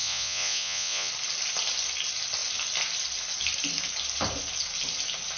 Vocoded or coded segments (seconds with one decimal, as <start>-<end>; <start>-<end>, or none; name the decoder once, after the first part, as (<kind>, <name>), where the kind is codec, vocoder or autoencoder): 0.0-1.1 (vocoder, Vocos)